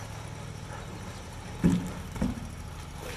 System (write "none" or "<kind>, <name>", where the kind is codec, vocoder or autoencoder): none